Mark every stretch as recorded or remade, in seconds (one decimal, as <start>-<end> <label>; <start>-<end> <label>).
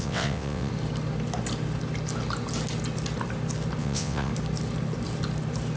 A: 0.0-0.7 remade; 0.7-3.8 recorded; 3.8-4.3 remade; 4.3-5.8 recorded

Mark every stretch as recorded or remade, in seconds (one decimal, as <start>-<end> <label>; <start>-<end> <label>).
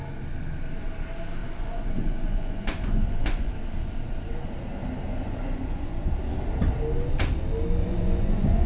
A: 0.0-1.4 recorded; 1.4-3.5 remade; 3.5-5.1 recorded; 5.1-6.1 remade; 6.1-7.8 recorded; 7.8-8.7 remade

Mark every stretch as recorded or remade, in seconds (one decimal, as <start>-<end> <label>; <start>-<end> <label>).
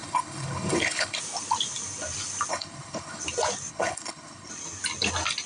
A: 0.0-1.2 remade; 1.2-2.5 recorded; 2.5-3.2 remade; 3.2-3.7 recorded; 3.7-4.5 remade; 4.5-5.5 recorded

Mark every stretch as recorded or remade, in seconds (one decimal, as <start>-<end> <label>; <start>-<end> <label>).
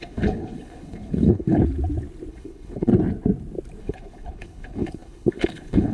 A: 0.0-1.6 remade; 1.6-2.3 recorded; 2.3-2.9 remade; 2.9-3.8 recorded; 3.8-5.9 remade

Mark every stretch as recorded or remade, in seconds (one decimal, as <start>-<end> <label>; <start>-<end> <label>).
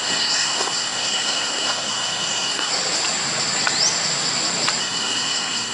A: 0.0-2.7 remade; 2.7-4.8 recorded; 4.8-5.7 remade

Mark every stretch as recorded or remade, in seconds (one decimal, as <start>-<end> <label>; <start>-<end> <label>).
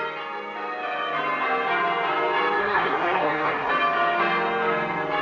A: 0.0-2.6 recorded; 2.6-3.7 remade; 3.7-5.2 recorded